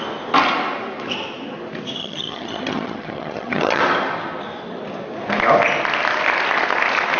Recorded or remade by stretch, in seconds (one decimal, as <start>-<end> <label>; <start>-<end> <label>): 0.0-2.0 recorded; 2.0-3.8 remade; 3.8-7.2 recorded